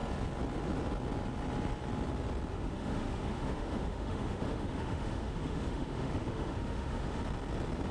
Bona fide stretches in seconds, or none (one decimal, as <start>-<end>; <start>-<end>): 0.0-2.5; 7.2-7.9